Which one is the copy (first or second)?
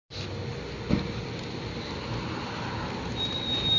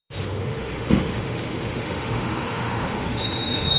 second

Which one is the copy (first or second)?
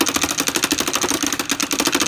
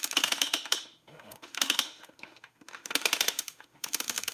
second